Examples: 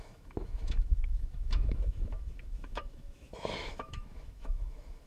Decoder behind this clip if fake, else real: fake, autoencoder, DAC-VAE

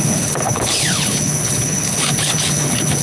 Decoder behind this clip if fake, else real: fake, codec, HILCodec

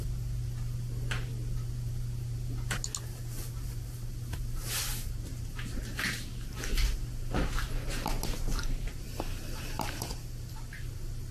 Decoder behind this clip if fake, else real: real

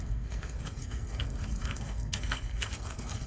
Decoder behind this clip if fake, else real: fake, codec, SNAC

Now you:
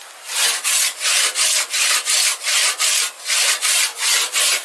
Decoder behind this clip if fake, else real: real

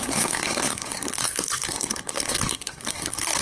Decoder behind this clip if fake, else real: fake, codec, SNAC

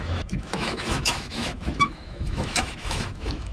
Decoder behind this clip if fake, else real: fake, autoencoder, DAC-VAE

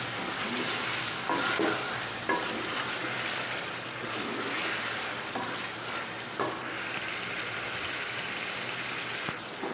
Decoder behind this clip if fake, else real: real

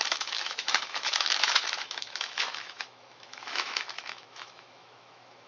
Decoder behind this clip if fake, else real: fake, autoencoder, DAC-VAE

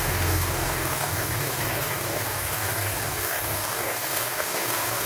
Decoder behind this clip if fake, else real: fake, codec, DAC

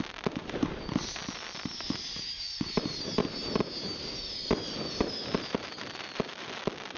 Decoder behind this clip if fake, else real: fake, vocoder, BigVGAN v2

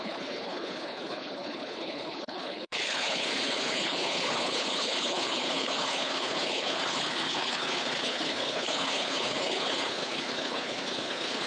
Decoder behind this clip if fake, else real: fake, codec, HILCodec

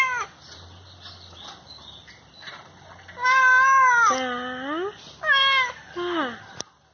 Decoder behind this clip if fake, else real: real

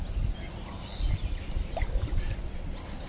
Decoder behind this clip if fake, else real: real